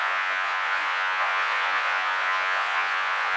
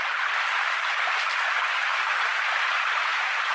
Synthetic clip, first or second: first